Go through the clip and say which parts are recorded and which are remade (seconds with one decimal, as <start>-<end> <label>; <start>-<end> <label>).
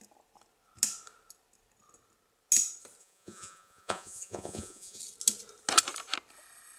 0.0-3.0 recorded; 3.0-5.0 remade; 5.0-6.8 recorded